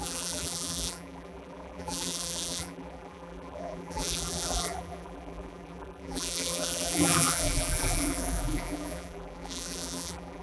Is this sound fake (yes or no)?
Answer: yes